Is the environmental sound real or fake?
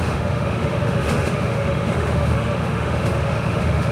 fake